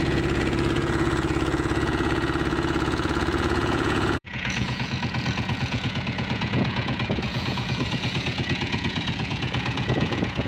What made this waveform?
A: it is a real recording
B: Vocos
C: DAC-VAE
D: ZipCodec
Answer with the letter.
B